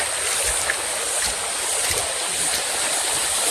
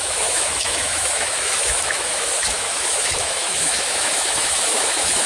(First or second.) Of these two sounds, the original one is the first